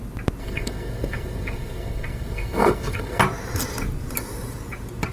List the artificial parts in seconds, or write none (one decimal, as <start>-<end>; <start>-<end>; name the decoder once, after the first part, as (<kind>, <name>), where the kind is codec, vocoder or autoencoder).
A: 0.4-3.2 (codec, SNAC)